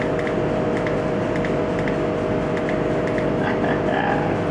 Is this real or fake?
real